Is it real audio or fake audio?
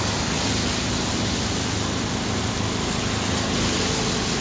real